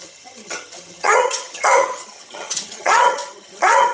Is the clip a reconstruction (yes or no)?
yes